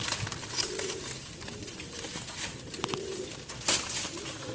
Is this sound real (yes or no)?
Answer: yes